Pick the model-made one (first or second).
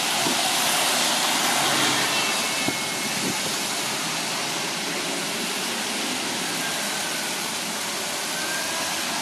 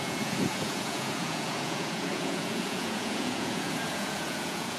second